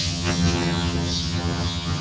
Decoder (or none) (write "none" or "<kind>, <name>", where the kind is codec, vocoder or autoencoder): vocoder, HiFi-GAN